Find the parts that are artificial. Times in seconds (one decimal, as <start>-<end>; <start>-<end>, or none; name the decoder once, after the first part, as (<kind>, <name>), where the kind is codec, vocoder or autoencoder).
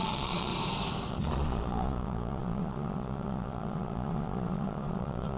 0.0-0.5 (vocoder, Vocos); 1.1-5.4